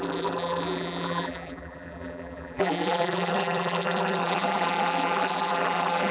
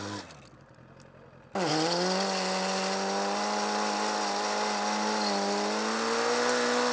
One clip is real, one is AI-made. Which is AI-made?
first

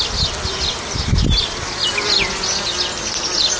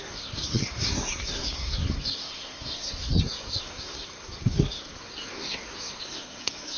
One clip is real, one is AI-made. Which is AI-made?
second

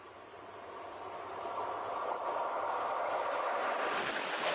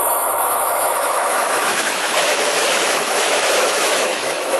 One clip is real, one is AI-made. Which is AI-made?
second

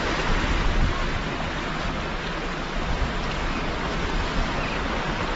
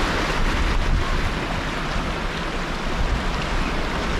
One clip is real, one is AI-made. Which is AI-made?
second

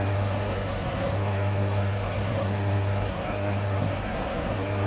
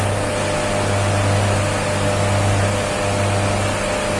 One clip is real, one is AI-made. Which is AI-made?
first